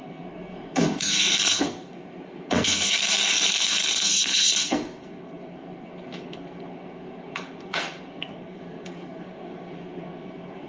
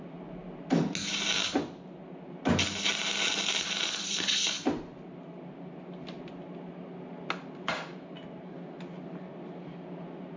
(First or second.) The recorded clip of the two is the second